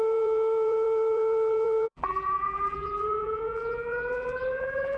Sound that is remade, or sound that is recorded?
remade